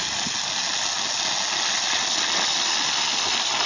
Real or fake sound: real